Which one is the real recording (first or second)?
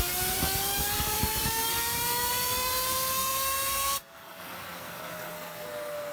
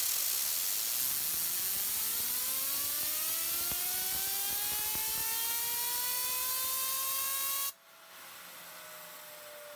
second